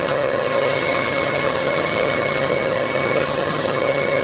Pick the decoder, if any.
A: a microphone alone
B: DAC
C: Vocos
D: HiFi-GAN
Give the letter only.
D